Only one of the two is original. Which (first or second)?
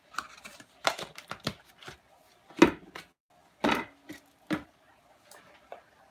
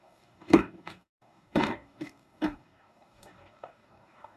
first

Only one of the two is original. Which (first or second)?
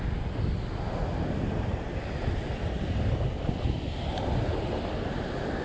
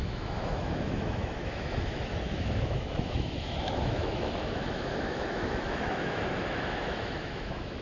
first